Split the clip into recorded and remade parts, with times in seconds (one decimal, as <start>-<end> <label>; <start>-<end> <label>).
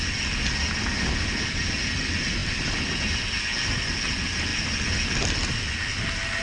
0.0-6.4 recorded